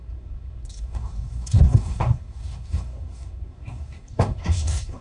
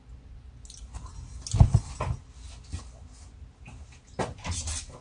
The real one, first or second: second